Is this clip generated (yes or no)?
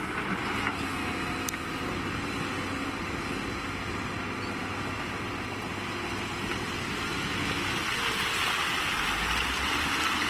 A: no